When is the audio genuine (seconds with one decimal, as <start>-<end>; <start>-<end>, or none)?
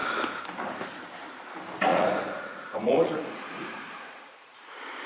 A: 0.0-1.9